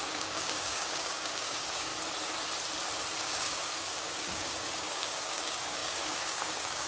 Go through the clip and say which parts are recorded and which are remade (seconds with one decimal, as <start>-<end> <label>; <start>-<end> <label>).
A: 0.0-1.9 remade; 1.9-3.2 recorded; 3.2-6.9 remade